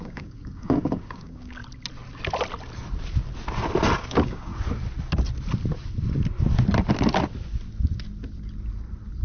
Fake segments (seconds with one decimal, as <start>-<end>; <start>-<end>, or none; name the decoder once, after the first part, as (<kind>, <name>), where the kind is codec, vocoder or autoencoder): 0.0-1.6 (codec, DAC); 4.1-4.5